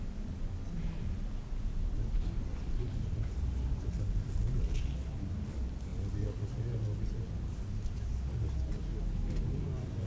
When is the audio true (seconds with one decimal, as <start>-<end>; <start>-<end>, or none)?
0.0-10.1